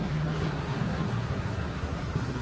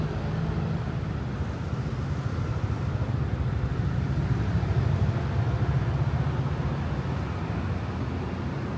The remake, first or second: first